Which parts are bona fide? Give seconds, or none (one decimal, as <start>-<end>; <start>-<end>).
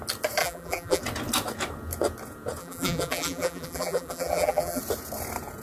0.0-0.4; 1.0-2.6; 4.8-5.6